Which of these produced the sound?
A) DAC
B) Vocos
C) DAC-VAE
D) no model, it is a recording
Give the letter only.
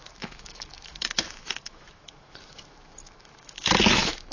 C